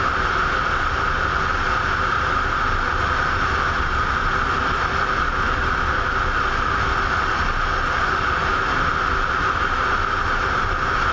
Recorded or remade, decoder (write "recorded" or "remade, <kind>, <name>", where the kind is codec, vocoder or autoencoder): recorded